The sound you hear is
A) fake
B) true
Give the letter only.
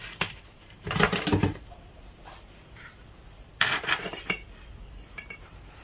A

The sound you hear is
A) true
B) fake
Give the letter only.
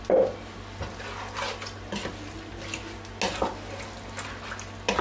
A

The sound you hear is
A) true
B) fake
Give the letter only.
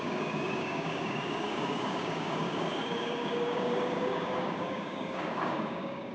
B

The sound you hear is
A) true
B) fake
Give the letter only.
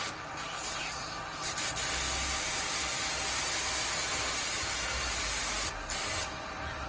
A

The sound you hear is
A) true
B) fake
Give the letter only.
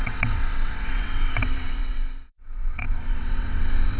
B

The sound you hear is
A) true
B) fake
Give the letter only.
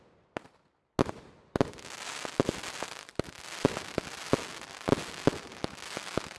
A